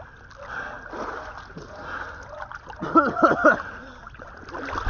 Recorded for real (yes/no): yes